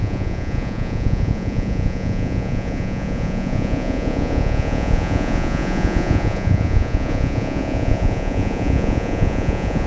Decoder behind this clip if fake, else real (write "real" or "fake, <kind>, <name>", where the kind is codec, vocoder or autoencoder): fake, vocoder, Vocos